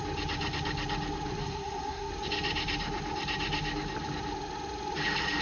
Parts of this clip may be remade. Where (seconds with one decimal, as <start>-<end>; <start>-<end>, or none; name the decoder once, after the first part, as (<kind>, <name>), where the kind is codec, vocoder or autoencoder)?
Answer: 1.4-2.1 (codec, SNAC)